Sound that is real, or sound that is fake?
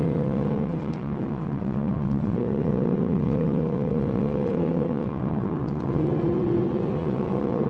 fake